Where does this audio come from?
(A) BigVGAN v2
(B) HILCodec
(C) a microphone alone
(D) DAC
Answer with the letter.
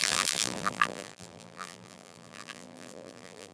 A